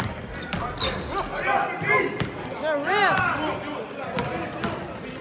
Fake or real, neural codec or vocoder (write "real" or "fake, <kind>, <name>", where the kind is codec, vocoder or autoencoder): real